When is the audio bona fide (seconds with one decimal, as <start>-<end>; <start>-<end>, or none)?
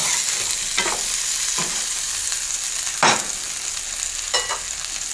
0.0-5.1